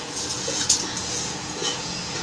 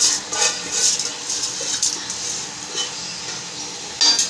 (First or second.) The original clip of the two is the second